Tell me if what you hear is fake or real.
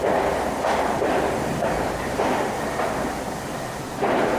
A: real